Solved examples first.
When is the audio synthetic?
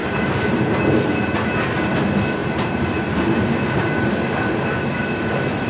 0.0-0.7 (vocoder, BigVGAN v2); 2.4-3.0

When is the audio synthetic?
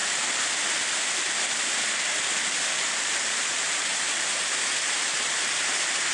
0.0-3.4 (vocoder, BigVGAN v2); 3.9-5.0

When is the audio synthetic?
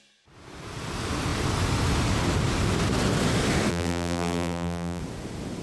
3.7-5.0 (vocoder, BigVGAN v2)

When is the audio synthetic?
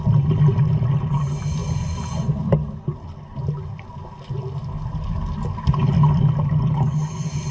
1.6-2.5 (vocoder, BigVGAN v2)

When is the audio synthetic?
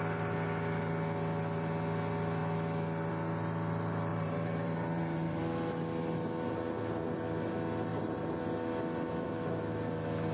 4.1-5.4 (vocoder, BigVGAN v2); 7.9-8.4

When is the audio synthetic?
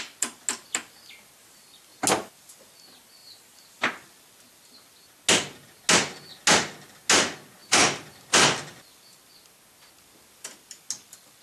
7.6-9.0 (vocoder, BigVGAN v2)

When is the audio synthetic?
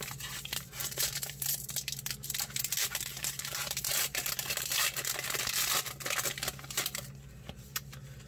0.8-1.7 (vocoder, BigVGAN v2); 3.1-5.0